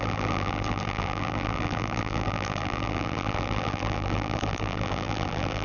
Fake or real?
fake